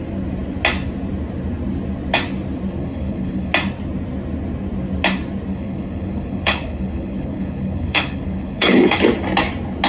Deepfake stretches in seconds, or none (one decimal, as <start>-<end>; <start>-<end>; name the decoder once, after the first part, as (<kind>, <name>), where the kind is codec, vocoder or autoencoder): 2.8-3.5 (codec, HILCodec); 5.5-9.0